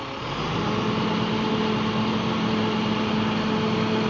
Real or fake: real